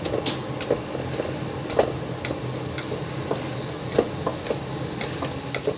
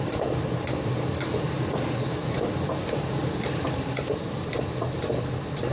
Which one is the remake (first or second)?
second